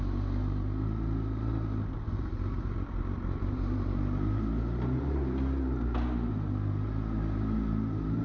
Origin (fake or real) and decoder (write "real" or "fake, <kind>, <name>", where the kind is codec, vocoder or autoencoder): real